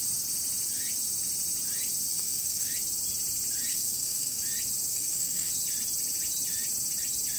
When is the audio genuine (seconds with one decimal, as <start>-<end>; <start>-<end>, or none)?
0.0-2.1; 2.7-3.7; 4.4-4.9; 5.5-7.4

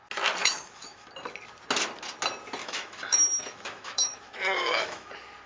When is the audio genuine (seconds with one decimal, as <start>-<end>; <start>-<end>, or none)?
0.0-0.4; 1.1-2.6; 5.1-5.5

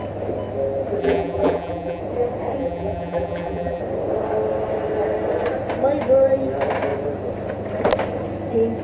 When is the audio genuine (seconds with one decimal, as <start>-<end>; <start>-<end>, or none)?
0.0-1.0; 2.0-2.6; 3.8-8.8

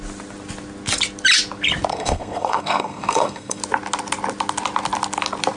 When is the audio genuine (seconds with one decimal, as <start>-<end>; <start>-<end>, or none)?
0.0-1.9; 3.6-5.6

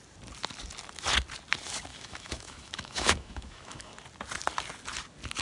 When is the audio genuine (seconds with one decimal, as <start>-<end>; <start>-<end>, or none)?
0.0-1.9; 3.9-5.4

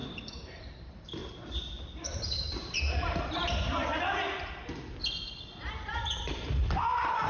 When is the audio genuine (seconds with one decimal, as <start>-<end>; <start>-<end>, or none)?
1.2-2.0; 3.4-6.2